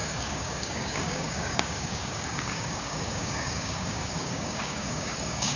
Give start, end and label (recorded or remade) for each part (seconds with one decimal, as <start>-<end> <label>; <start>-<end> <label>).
0.0-5.6 remade